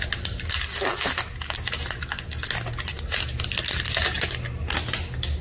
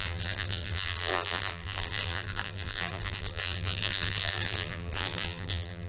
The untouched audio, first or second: first